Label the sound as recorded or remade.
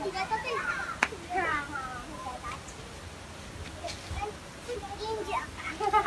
recorded